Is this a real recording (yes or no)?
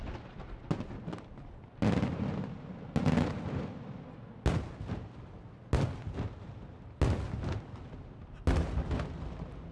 yes